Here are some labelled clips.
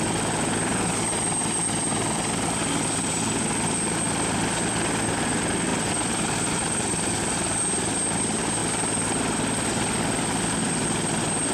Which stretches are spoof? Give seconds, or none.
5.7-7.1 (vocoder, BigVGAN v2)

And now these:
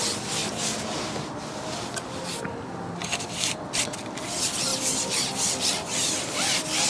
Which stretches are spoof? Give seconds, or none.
0.4-1.8 (vocoder, BigVGAN v2)